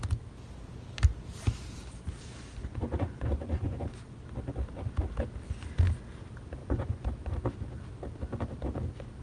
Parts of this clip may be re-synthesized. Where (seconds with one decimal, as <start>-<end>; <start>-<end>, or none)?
2.6-3.9; 6.6-7.1